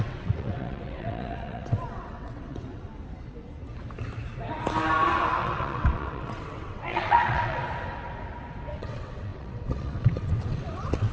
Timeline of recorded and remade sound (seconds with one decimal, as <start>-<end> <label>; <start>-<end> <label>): 0.0-2.9 remade; 2.9-5.4 recorded; 5.4-7.6 remade; 7.6-8.8 recorded; 8.8-11.1 remade